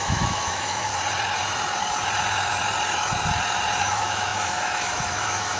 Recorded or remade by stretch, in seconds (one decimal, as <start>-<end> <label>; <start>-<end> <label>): 0.0-0.9 remade; 0.9-3.8 recorded; 3.8-5.6 remade